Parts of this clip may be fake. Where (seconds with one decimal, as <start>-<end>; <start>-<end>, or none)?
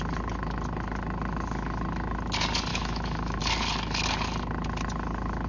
2.7-3.4